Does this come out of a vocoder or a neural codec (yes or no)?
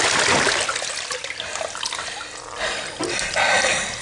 no